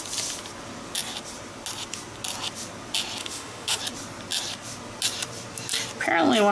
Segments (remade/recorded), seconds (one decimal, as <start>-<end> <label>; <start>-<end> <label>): 0.0-3.2 recorded; 3.2-3.8 remade; 3.8-6.5 recorded